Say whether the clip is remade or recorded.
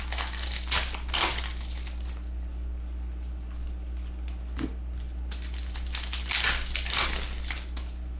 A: recorded